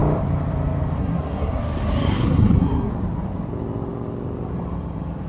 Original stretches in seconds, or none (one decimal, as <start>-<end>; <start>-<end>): 0.0-1.0; 1.6-2.1; 2.9-5.3